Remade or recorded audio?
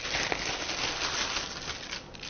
recorded